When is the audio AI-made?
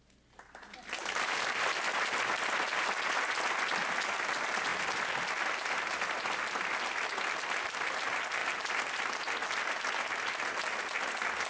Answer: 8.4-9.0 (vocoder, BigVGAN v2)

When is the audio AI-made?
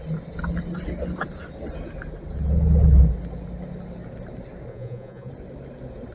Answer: 4.7-5.3 (vocoder, Vocos)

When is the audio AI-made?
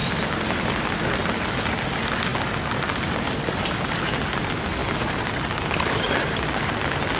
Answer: none